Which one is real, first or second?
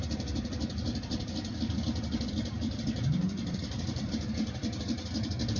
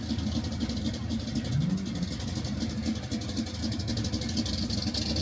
second